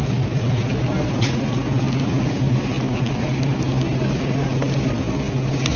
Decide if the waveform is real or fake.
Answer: real